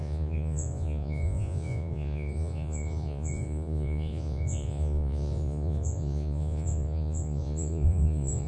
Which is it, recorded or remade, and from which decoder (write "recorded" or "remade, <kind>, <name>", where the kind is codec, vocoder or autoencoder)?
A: remade, vocoder, Vocos